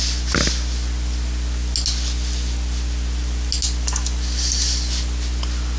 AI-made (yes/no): no